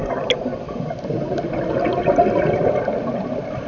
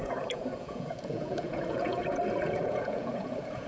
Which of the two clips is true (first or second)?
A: first